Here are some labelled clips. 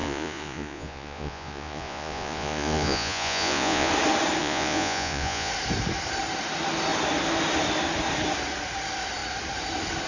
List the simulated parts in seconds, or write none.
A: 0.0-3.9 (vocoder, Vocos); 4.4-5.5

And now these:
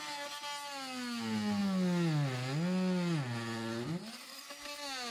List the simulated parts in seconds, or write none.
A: none

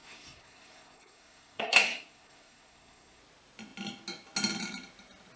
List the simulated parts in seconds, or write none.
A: 0.0-3.2 (codec, SNAC)